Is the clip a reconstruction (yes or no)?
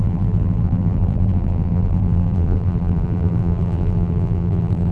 yes